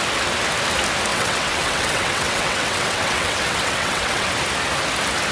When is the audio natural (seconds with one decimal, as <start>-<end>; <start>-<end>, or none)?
0.0-1.1; 4.3-5.3